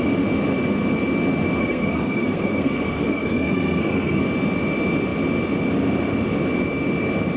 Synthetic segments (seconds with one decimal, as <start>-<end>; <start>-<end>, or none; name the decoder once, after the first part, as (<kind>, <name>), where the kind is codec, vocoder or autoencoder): 1.6-4.2 (codec, SNAC)